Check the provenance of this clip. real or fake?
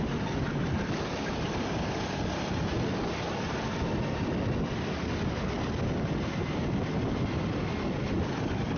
real